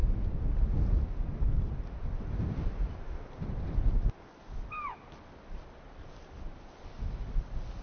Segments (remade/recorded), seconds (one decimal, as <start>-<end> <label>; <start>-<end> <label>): 0.0-7.8 recorded